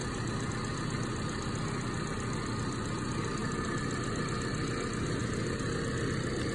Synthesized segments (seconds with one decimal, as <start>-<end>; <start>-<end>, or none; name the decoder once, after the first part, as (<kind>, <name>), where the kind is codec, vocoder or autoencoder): 0.0-0.5 (vocoder, BigVGAN v2); 3.4-4.1; 5.2-5.8

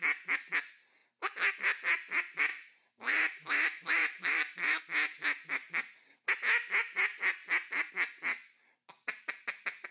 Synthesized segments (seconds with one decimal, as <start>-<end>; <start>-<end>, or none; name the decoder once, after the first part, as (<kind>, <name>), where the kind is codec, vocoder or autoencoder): 2.5-4.8 (vocoder, BigVGAN v2); 8.3-8.9

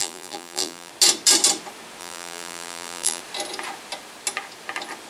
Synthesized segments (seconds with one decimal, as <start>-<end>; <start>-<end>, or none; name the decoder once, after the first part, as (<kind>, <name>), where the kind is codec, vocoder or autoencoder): 0.0-0.9 (vocoder, BigVGAN v2); 2.0-3.2